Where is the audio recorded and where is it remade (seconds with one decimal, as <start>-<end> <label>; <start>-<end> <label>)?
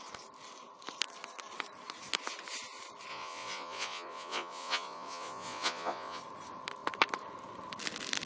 0.0-3.1 recorded; 3.1-6.2 remade; 6.2-8.3 recorded